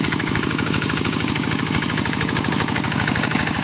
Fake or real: fake